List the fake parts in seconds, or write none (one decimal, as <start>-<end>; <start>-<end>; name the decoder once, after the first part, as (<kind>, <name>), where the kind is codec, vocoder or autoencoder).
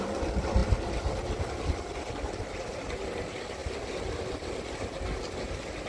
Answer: none